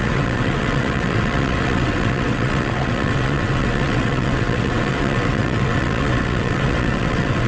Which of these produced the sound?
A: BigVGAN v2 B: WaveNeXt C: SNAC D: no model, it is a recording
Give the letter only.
B